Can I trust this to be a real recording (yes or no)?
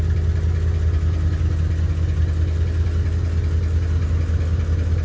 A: yes